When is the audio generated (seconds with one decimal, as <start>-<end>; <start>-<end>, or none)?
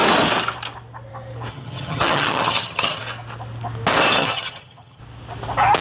1.5-3.0; 4.2-5.0